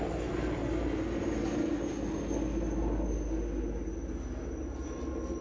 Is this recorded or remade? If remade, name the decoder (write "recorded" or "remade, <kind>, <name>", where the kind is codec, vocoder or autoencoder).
recorded